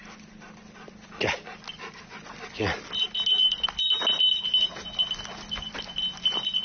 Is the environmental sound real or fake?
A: real